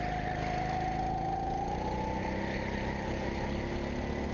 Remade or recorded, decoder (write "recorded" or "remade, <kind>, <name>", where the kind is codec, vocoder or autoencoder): recorded